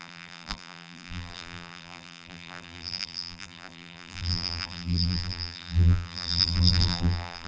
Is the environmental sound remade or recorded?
remade